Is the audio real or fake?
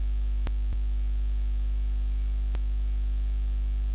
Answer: real